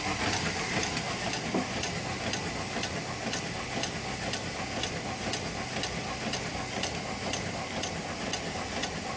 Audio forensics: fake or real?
real